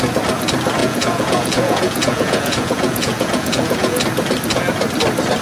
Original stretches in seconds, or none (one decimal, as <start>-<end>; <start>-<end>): 0.0-0.8; 4.0-5.4